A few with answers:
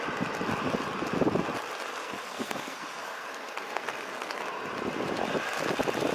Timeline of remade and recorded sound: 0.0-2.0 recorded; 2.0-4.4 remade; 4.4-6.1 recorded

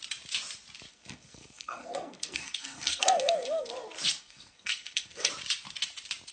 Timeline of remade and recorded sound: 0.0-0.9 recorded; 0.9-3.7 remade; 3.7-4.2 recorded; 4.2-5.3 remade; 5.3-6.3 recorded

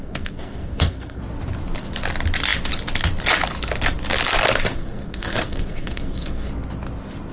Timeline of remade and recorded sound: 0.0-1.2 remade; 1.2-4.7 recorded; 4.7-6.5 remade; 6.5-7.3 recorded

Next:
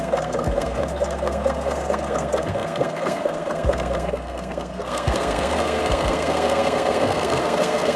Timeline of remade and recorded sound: 0.0-8.0 remade

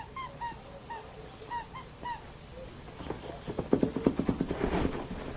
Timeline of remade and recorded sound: 0.0-5.4 recorded

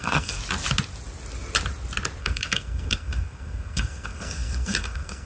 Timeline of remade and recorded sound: 0.0-0.4 remade; 0.4-2.2 recorded; 2.2-5.3 remade

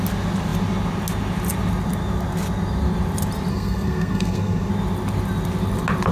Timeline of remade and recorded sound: 0.0-3.5 recorded; 3.5-4.7 remade; 4.7-6.1 recorded

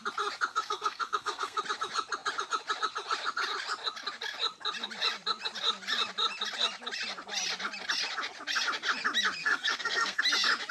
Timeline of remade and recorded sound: 0.0-0.5 recorded; 0.5-1.6 remade; 1.6-9.4 recorded; 9.4-10.2 remade; 10.2-10.7 recorded